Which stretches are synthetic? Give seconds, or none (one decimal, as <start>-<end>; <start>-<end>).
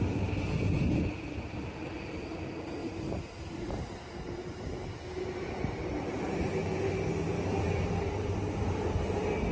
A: none